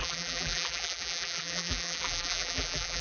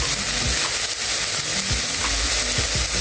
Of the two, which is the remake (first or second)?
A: first